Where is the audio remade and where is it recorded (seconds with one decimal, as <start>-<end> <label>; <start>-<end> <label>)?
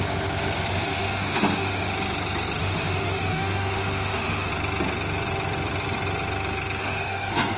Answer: 0.0-0.7 recorded; 0.7-1.9 remade; 1.9-2.6 recorded; 2.6-4.5 remade; 4.5-6.8 recorded; 6.8-7.6 remade